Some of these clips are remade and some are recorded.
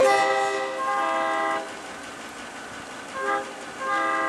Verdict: recorded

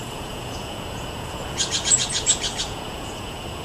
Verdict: remade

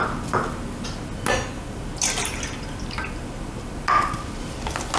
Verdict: recorded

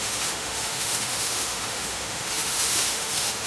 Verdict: remade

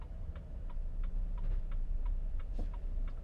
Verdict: remade